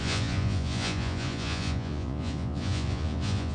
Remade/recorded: remade